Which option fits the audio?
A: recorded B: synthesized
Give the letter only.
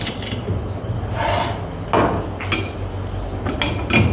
A